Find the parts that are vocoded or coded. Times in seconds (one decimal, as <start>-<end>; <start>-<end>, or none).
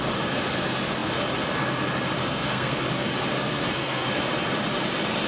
2.2-2.8; 3.3-4.1